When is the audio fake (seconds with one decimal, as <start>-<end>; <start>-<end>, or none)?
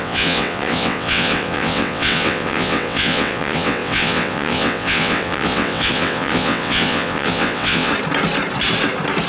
0.0-7.9